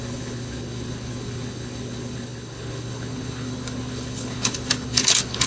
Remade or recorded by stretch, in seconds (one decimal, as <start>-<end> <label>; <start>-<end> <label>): 0.0-5.5 remade